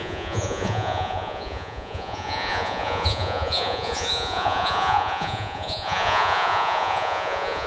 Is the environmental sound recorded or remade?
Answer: remade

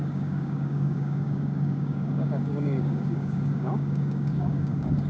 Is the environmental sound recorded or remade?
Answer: remade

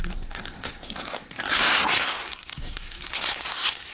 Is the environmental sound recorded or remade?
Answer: remade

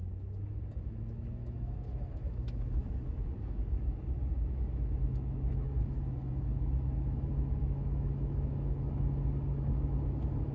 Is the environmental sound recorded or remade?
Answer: remade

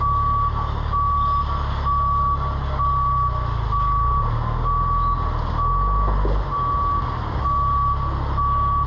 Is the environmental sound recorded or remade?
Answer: recorded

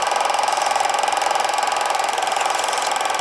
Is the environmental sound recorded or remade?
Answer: recorded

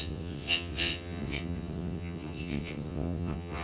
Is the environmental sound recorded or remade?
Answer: remade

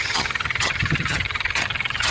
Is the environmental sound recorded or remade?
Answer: remade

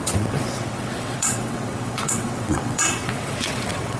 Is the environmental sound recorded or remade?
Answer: remade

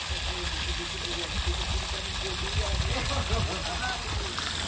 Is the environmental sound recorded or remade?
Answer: recorded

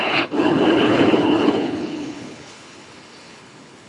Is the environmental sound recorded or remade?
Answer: remade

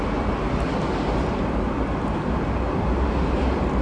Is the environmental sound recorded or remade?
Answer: recorded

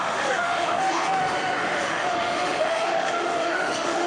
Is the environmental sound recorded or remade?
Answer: remade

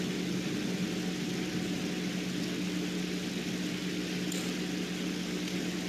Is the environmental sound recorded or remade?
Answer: recorded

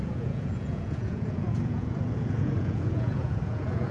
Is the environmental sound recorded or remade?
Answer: remade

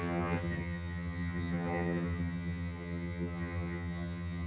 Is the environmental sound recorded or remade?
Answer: remade